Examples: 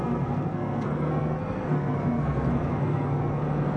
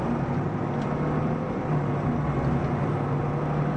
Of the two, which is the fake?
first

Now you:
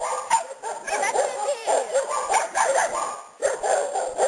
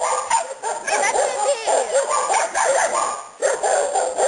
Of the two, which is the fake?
first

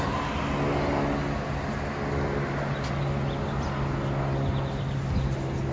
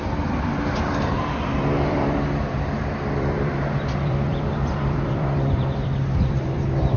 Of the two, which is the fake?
second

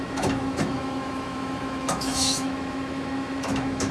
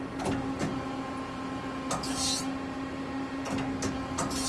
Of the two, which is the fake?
first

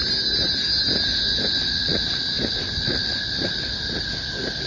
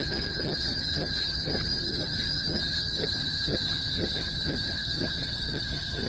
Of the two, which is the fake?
second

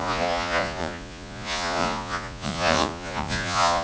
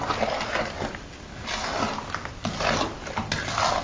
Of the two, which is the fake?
first